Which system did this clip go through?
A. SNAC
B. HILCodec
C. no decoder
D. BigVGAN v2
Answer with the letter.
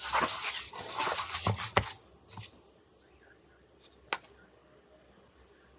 C